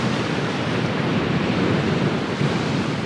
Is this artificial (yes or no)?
yes